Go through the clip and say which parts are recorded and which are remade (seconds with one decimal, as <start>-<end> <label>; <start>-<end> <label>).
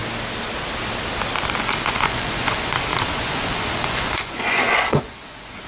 0.0-1.6 recorded; 1.6-5.7 remade